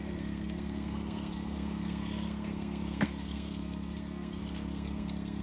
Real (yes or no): no